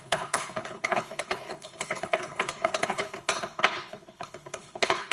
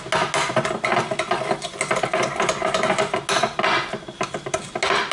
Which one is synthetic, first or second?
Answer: first